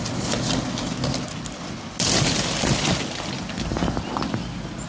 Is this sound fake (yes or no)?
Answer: no